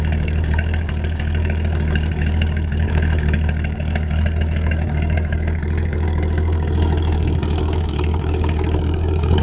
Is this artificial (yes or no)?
yes